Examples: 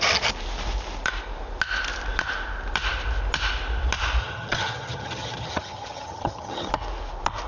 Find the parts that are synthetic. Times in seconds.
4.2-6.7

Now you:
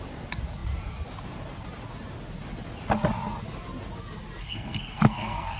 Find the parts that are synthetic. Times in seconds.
4.4-5.6

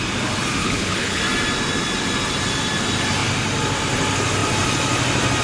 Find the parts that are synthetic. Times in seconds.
0.6-1.2

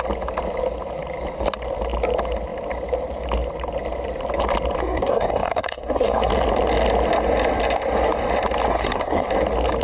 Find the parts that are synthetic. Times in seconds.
4.8-6.3; 8.7-9.3

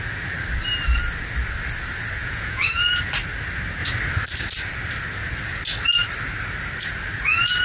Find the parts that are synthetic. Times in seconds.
2.2-3.0

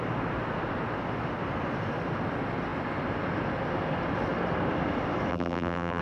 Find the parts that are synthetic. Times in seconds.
5.3-6.0

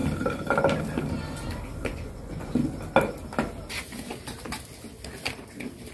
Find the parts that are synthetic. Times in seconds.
1.8-2.5

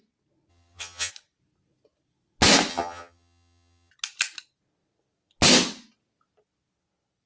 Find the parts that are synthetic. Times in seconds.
0.5-1.1; 2.7-3.9